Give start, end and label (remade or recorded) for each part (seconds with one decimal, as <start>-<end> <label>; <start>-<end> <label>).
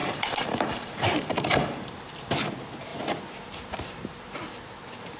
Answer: 0.0-1.9 remade; 1.9-5.2 recorded